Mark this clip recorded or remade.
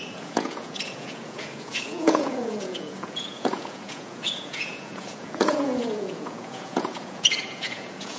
remade